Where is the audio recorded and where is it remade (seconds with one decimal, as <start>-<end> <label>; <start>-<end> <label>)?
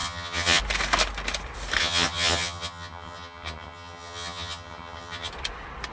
0.0-0.6 remade; 0.6-1.8 recorded; 1.8-5.3 remade; 5.3-5.9 recorded